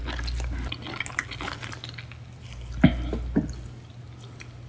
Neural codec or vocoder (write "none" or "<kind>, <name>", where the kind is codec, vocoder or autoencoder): none